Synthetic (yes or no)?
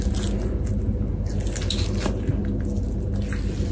no